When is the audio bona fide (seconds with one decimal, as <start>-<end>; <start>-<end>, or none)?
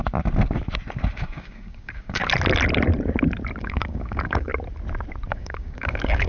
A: 0.0-1.2; 2.2-3.6; 4.5-5.3